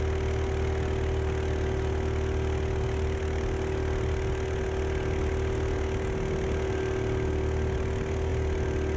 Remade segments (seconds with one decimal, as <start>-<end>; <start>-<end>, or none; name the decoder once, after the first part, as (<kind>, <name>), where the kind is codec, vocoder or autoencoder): none